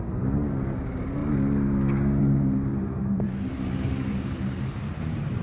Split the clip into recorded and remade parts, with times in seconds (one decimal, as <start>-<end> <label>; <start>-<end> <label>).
0.0-1.2 remade; 1.2-2.2 recorded; 2.2-5.4 remade